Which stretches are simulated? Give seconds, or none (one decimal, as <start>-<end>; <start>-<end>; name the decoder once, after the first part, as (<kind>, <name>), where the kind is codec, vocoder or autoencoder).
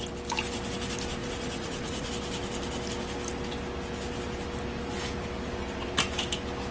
1.2-2.1 (vocoder, Vocos)